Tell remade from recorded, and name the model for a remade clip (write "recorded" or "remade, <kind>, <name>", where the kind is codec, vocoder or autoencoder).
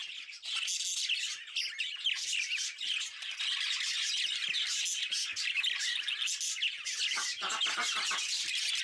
recorded